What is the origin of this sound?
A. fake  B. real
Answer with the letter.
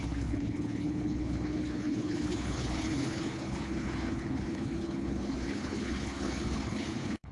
A